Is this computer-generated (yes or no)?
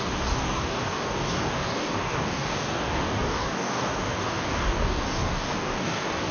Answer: yes